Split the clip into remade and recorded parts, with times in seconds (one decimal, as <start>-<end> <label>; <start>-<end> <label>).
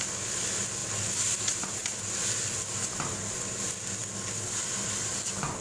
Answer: 0.0-5.6 recorded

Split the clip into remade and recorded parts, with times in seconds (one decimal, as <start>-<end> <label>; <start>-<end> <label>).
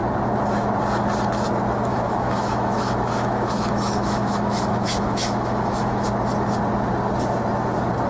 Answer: 0.0-1.9 recorded; 1.9-6.1 remade; 6.1-8.1 recorded